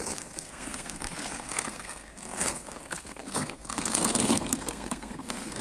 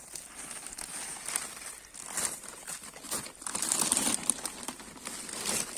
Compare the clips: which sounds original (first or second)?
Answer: second